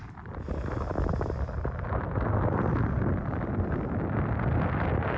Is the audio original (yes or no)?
yes